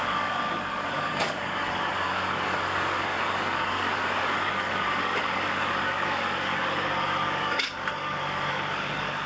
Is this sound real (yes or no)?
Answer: no